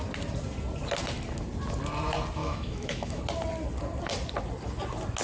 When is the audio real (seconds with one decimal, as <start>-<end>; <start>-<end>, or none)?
0.0-2.4; 3.2-5.2